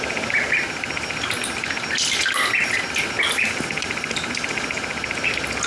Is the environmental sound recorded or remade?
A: recorded